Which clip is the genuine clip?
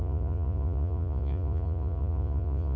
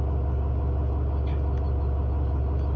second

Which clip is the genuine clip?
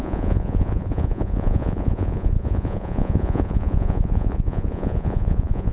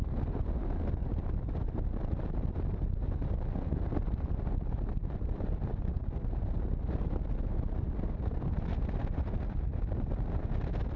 second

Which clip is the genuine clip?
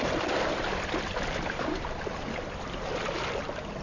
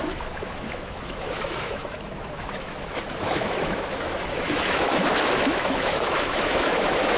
first